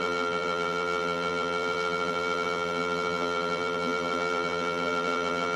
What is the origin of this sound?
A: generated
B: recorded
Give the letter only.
A